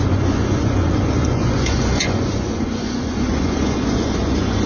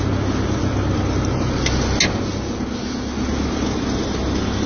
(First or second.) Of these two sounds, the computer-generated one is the first